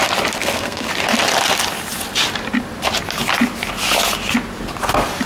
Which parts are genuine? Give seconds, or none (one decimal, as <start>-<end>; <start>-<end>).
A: 0.0-0.4; 0.9-5.3